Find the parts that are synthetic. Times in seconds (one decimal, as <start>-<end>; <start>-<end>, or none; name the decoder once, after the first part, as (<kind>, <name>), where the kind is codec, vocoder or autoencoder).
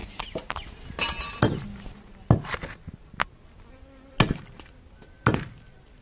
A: none